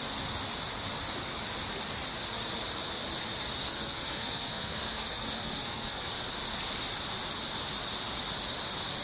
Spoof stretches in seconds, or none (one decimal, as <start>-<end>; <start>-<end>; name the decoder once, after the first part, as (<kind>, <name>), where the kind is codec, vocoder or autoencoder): 3.6-6.1 (codec, SNAC)